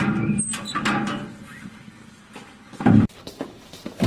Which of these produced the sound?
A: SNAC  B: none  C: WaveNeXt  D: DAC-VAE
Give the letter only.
B